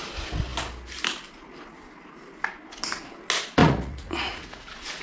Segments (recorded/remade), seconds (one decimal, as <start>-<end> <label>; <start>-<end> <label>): 0.0-3.6 recorded; 3.6-5.0 remade